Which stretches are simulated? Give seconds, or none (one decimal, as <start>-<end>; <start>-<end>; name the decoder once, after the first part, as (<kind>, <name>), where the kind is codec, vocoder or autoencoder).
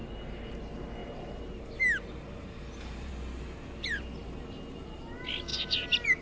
1.0-3.1 (vocoder, BigVGAN v2); 4.2-5.0